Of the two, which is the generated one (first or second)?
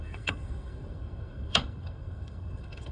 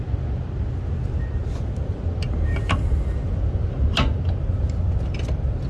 first